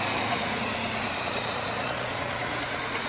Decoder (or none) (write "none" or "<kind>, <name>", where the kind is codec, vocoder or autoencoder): vocoder, Vocos